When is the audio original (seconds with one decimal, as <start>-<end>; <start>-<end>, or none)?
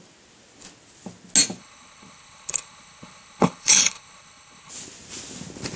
0.0-1.6; 4.7-5.8